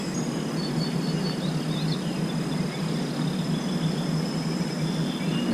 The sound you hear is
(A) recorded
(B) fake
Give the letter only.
A